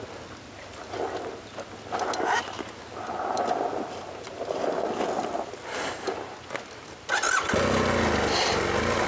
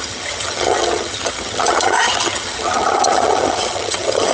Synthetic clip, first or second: second